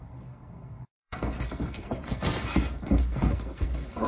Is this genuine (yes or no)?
no